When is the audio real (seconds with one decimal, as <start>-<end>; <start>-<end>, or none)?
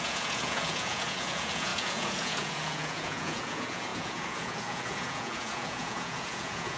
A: none